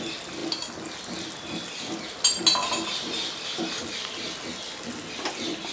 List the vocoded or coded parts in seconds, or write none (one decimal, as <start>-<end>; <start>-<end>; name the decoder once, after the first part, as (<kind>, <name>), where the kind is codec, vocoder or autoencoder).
none